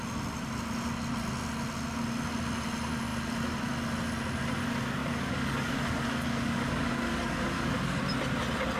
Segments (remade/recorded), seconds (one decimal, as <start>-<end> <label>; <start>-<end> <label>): 0.0-5.0 recorded; 5.0-8.0 remade; 8.0-8.8 recorded